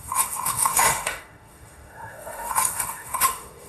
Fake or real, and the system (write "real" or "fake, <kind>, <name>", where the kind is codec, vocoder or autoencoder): fake, autoencoder, DAC-VAE